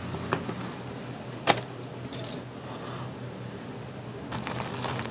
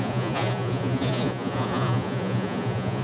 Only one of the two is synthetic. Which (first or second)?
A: second